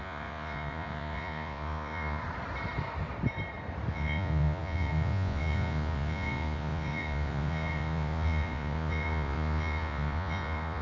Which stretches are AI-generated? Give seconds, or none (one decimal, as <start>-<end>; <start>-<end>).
0.0-2.2; 3.9-10.8